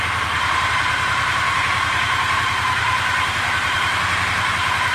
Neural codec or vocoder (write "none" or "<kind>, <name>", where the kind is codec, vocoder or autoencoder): vocoder, BigVGAN v2